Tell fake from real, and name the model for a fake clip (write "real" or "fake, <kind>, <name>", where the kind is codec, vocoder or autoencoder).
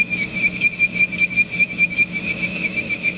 fake, autoencoder, DAC-VAE